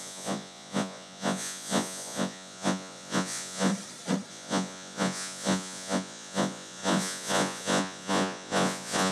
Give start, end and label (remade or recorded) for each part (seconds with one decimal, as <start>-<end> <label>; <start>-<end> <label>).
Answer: 0.0-3.7 remade; 3.7-4.3 recorded; 4.3-9.1 remade